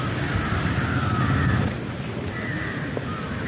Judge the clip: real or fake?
real